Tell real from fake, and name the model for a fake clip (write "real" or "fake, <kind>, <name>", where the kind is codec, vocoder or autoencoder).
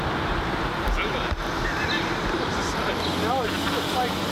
real